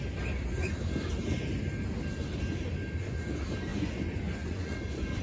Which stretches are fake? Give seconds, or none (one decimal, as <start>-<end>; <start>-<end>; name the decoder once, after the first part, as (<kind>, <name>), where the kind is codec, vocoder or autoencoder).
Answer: 3.7-5.2 (vocoder, Vocos)